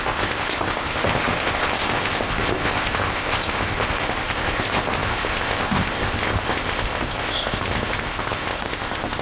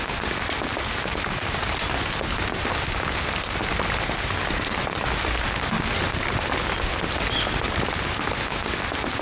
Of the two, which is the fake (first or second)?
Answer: first